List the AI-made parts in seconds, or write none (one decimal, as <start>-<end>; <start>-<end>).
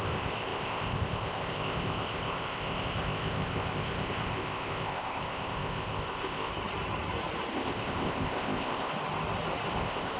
0.0-6.5; 7.5-8.9; 9.7-10.2